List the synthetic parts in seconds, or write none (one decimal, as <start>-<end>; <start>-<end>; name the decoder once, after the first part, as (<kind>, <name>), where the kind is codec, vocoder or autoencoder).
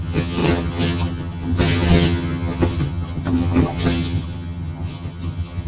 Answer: 0.0-5.7 (vocoder, HiFi-GAN)